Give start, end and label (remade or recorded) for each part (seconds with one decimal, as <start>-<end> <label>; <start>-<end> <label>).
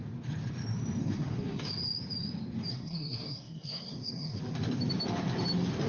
0.0-1.0 recorded; 1.0-1.6 remade; 1.6-2.7 recorded; 2.7-4.4 remade; 4.4-5.9 recorded